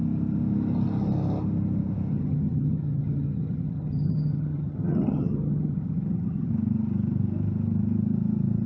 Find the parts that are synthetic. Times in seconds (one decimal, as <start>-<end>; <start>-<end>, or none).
2.1-6.5